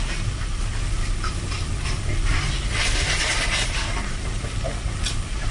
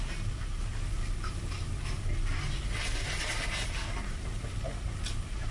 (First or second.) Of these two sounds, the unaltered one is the second